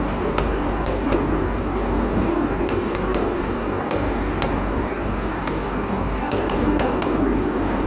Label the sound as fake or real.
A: fake